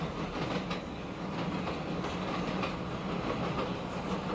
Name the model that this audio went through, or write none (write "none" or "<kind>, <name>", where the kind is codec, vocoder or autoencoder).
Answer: none